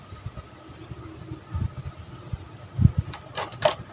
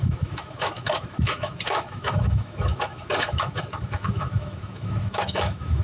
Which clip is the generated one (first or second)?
second